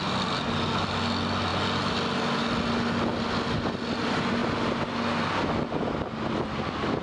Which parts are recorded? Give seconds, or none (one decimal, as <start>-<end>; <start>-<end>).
0.0-7.0